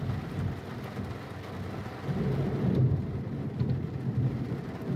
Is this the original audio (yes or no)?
yes